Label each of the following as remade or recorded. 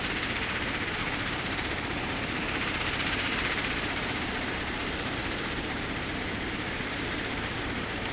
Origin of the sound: remade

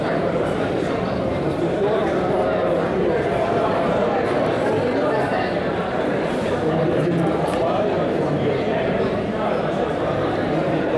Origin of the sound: remade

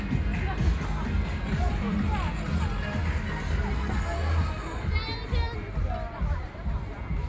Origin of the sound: recorded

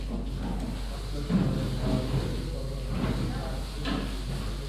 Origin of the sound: recorded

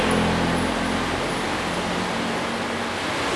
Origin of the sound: recorded